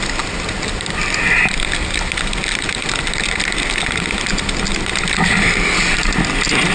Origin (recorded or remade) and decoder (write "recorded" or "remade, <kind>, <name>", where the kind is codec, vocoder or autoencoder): recorded